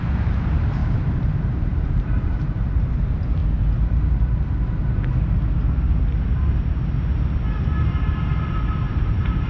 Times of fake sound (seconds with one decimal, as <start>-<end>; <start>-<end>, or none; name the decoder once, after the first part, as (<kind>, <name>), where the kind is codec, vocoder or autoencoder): 0.0-3.4 (vocoder, BigVGAN v2); 8.0-9.5